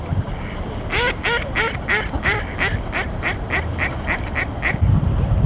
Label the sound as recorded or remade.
recorded